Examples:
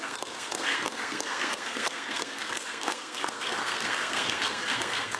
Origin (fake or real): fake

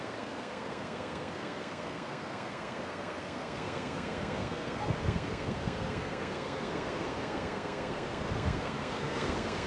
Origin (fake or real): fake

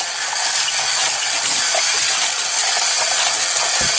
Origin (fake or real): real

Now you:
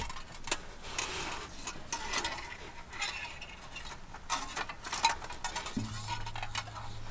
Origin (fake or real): real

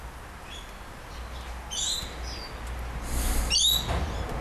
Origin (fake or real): real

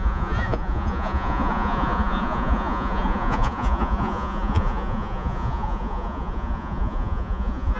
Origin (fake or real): fake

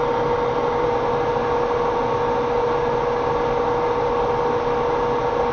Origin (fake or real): real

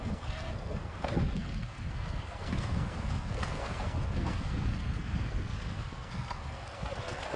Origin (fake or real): fake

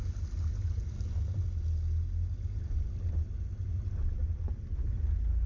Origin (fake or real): real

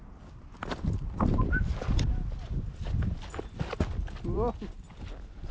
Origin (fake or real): real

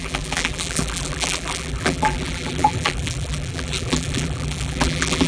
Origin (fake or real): fake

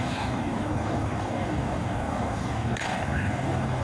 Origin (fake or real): fake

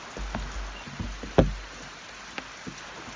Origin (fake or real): real